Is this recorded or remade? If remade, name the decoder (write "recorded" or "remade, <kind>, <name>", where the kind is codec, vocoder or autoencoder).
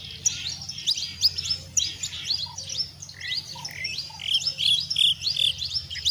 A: recorded